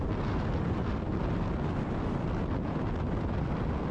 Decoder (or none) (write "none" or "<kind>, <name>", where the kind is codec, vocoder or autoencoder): none